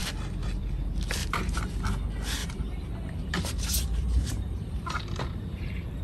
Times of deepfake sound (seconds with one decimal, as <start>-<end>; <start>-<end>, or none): 1.2-1.8; 2.4-6.0